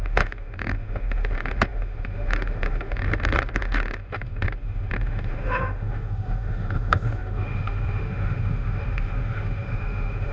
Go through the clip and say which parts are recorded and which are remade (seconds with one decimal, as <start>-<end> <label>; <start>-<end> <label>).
0.0-10.3 remade

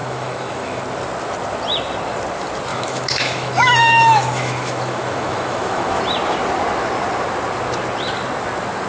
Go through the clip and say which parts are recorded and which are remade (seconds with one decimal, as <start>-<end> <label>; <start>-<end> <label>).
0.0-0.8 remade; 0.8-2.7 recorded; 2.7-6.0 remade; 6.0-8.9 recorded